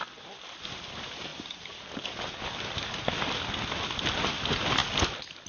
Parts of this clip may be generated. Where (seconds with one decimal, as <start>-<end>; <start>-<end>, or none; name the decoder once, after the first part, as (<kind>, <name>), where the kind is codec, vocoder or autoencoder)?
none